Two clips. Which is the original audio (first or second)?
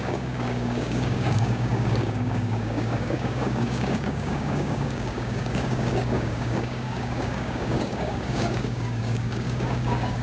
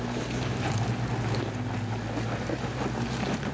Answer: second